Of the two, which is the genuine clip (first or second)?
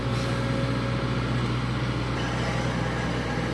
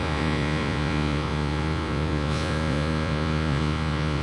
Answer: first